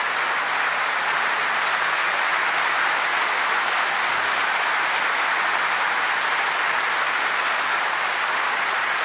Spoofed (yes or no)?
no